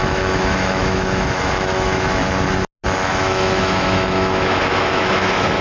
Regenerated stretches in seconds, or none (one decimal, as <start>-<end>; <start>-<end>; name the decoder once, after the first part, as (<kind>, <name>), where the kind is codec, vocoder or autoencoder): 0.0-2.2 (autoencoder, DAC-VAE); 3.1-5.6